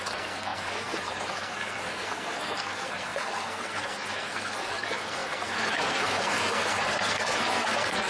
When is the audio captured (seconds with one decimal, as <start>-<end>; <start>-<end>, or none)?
none